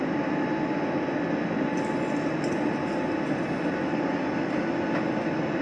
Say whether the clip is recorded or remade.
recorded